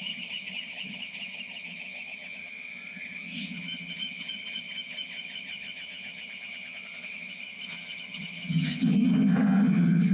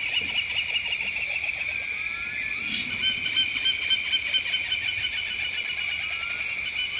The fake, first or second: first